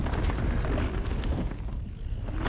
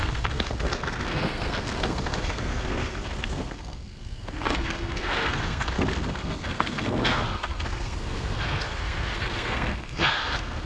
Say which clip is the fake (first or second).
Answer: second